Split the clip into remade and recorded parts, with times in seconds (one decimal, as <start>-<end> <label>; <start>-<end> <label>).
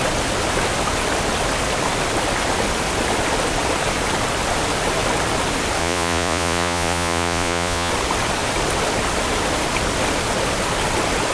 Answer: 0.0-5.8 recorded; 5.8-7.9 remade; 7.9-11.3 recorded